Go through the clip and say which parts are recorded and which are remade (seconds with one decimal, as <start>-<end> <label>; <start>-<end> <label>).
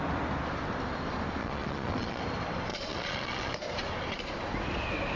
0.0-1.4 recorded; 1.4-2.2 remade; 2.2-2.7 recorded; 2.7-3.5 remade; 3.5-5.2 recorded